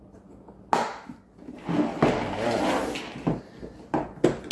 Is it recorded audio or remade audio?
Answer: recorded